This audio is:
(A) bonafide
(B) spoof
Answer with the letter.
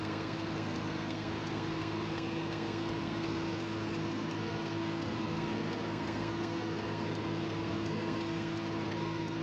B